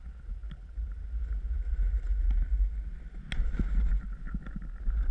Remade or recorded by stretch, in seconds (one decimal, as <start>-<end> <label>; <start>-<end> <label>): 0.0-5.1 recorded